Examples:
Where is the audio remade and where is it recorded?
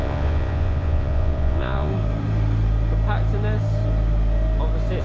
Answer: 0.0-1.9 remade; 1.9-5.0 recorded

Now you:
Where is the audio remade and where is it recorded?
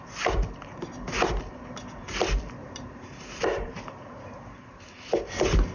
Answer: 0.0-2.6 recorded; 2.6-4.0 remade; 4.0-5.7 recorded